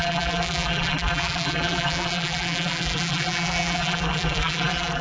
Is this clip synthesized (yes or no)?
yes